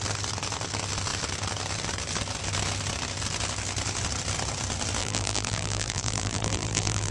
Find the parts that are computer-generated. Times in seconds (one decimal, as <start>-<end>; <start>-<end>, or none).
5.0-7.1